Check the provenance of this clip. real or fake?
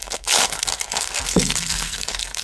fake